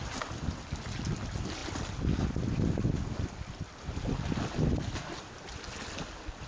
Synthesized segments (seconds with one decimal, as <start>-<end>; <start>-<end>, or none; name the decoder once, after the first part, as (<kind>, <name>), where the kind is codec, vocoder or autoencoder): none